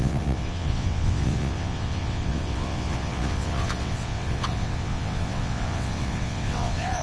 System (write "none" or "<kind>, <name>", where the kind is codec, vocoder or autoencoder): vocoder, WaveNeXt